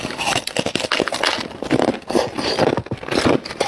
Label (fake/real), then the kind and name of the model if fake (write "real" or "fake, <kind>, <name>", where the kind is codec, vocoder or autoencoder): real